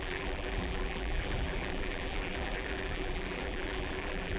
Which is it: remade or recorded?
remade